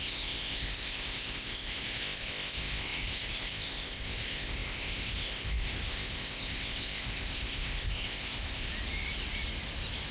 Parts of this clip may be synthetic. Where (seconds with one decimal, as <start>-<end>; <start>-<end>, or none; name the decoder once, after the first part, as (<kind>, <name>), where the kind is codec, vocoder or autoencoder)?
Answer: 0.0-8.7 (codec, ZipCodec)